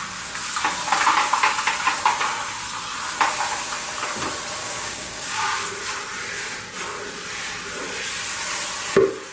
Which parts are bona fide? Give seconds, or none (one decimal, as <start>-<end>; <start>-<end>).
0.0-4.6; 5.5-9.3